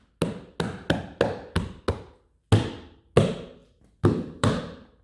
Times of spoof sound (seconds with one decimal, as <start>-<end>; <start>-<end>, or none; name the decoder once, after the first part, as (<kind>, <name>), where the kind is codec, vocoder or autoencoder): 3.6-4.5 (vocoder, BigVGAN v2)